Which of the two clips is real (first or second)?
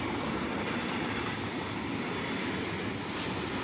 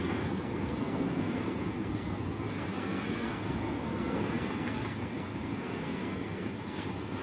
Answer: first